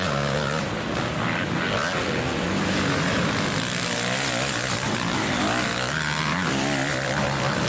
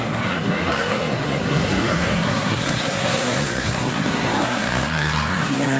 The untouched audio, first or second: first